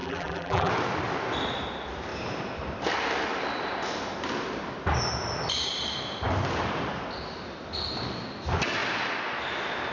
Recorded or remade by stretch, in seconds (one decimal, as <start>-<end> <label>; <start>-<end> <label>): 0.0-0.7 remade; 0.7-9.9 recorded